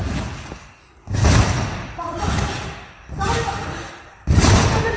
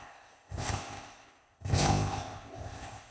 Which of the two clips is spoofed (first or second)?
second